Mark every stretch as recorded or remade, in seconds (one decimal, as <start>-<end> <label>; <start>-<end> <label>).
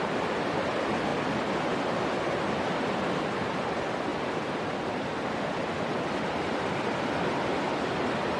0.0-8.4 recorded